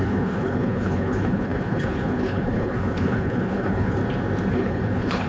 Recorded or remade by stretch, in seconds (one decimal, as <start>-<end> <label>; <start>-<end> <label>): 0.0-4.0 remade; 4.0-4.5 recorded; 4.5-5.3 remade